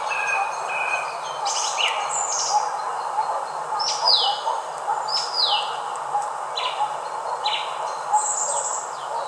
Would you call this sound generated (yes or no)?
no